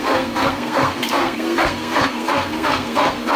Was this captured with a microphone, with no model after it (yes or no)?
no